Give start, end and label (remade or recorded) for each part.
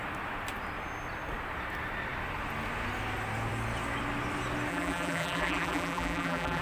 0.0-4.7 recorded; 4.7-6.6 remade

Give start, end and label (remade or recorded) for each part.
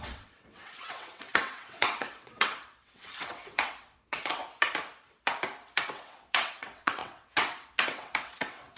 0.0-4.4 remade; 4.4-5.9 recorded; 5.9-8.8 remade